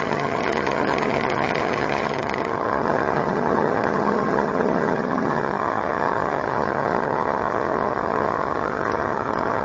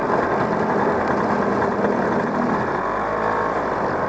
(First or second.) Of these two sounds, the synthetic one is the first